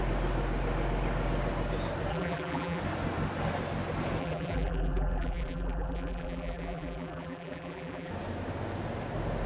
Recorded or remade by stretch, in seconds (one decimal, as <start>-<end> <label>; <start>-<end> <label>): 0.0-2.1 recorded; 2.1-2.8 remade; 2.8-4.2 recorded; 4.2-8.1 remade; 8.1-9.5 recorded